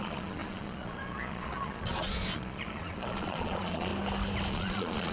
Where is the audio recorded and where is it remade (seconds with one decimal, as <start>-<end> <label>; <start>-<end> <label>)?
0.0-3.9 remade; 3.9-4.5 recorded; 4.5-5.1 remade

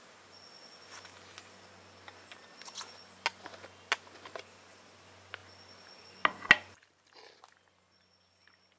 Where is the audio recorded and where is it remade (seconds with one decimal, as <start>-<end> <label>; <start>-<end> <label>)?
0.0-8.8 recorded

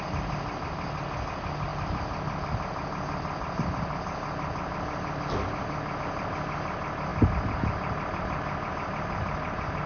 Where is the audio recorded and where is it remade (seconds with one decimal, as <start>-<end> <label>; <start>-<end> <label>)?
0.0-9.9 recorded